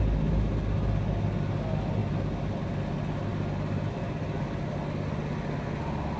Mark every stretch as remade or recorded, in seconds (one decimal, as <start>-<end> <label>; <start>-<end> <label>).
0.0-6.2 recorded